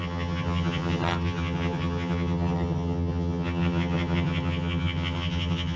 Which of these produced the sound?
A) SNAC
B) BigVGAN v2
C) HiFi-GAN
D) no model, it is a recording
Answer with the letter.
C